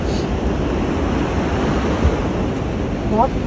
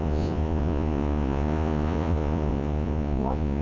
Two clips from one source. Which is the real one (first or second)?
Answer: first